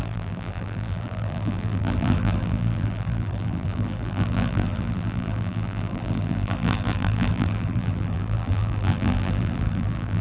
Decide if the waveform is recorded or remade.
remade